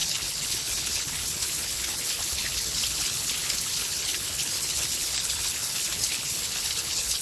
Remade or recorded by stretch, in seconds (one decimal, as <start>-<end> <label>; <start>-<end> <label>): 0.0-7.2 remade